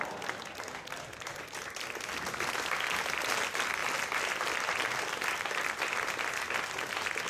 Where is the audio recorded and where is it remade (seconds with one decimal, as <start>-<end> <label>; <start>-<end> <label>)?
0.0-7.3 recorded